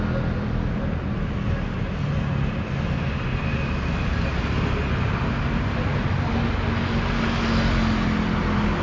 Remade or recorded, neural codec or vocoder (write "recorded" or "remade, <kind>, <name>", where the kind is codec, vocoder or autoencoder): recorded